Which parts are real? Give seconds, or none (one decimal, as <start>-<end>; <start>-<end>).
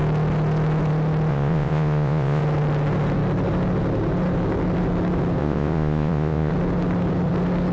0.0-1.3; 2.4-5.4; 6.5-7.7